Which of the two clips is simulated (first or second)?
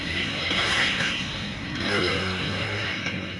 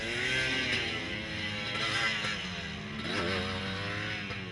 first